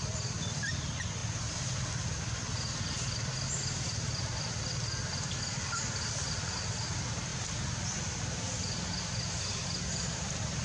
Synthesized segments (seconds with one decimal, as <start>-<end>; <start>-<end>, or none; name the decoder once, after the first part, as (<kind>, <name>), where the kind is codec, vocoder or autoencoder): 0.0-7.3 (vocoder, BigVGAN v2); 7.9-10.6